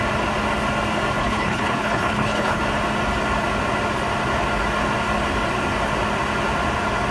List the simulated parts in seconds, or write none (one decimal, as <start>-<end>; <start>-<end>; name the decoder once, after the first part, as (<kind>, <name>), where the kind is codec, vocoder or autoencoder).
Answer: 1.2-2.6 (codec, HILCodec)